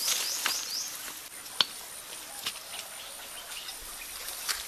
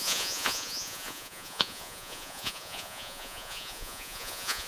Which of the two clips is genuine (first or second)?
first